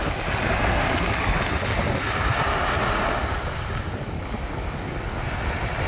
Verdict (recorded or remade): recorded